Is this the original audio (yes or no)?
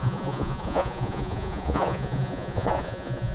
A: no